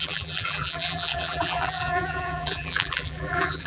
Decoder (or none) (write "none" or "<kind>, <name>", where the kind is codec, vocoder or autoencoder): vocoder, BigVGAN v2